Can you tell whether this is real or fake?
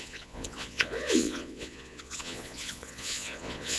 fake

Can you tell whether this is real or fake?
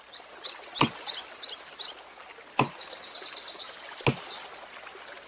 real